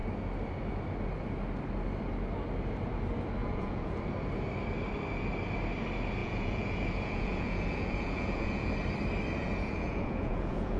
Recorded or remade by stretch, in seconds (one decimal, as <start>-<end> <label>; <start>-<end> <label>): 0.0-3.4 recorded; 3.4-4.0 remade; 4.0-6.2 recorded; 6.2-8.7 remade; 8.7-9.4 recorded; 9.4-10.8 remade